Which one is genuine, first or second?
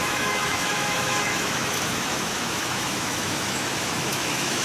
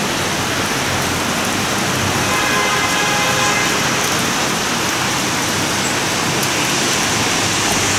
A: second